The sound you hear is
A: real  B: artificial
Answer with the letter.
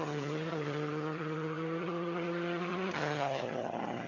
B